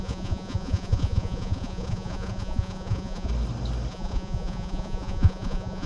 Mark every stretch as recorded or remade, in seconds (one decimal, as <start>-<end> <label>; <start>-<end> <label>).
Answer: 0.0-3.3 remade; 3.3-3.9 recorded; 3.9-5.9 remade